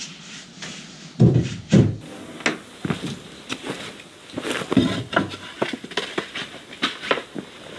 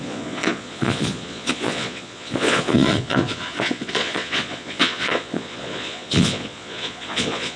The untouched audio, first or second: first